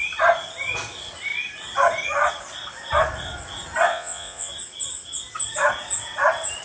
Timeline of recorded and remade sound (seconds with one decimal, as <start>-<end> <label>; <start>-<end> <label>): 0.0-3.9 recorded; 3.9-4.5 remade; 4.5-6.6 recorded

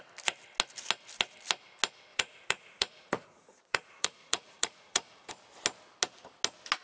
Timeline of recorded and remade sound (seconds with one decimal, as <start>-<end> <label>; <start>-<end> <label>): 0.0-2.1 recorded; 2.1-5.3 remade; 5.3-6.8 recorded

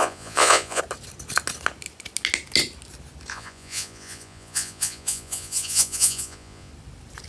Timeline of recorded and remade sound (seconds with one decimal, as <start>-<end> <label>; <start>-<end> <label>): 0.0-0.8 remade; 0.8-3.3 recorded; 3.3-6.7 remade; 6.7-7.3 recorded